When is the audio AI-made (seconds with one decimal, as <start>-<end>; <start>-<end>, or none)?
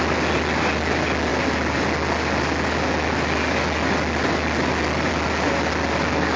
none